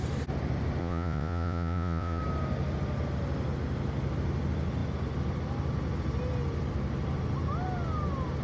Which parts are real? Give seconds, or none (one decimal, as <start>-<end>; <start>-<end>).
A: 0.0-0.8; 2.2-8.4